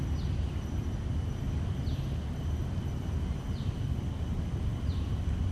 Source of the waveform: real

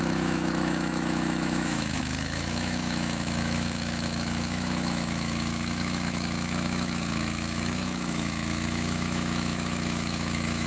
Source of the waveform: fake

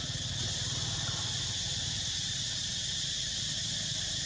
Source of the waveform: real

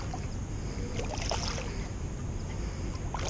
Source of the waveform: real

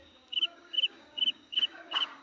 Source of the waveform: fake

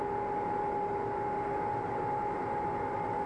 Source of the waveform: real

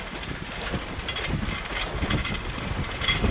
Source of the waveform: real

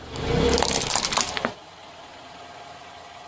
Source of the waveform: real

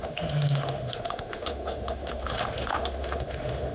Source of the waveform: fake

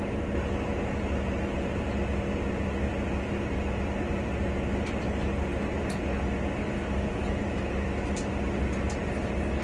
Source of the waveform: real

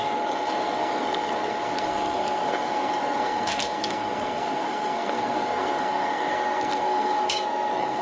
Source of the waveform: fake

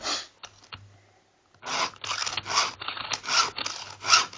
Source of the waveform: real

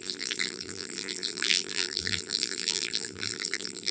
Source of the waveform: fake